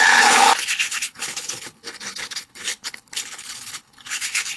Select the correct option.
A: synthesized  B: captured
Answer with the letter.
A